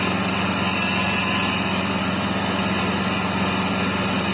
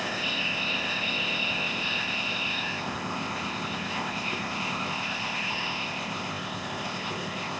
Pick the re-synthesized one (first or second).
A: second